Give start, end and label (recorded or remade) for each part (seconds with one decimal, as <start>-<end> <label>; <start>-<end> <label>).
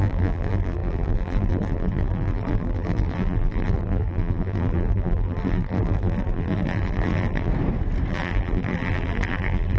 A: 0.0-7.5 remade; 7.5-8.1 recorded; 8.1-9.8 remade